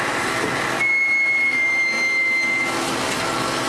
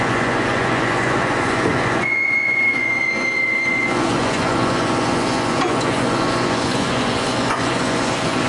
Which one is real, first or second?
first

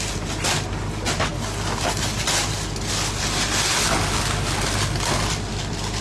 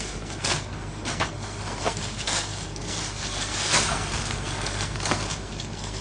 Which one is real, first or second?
first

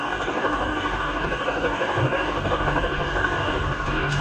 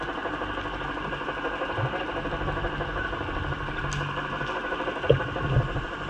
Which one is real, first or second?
second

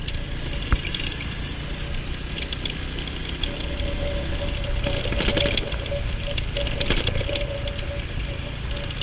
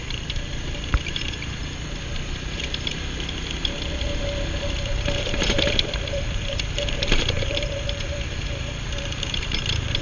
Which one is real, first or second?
first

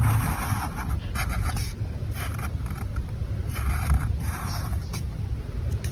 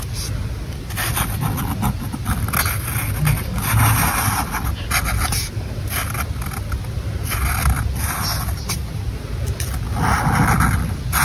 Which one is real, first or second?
second